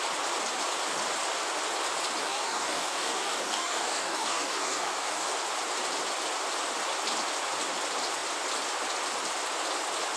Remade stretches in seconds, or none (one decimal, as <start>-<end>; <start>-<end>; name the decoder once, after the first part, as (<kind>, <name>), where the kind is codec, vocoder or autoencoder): 2.2-5.3 (codec, DAC)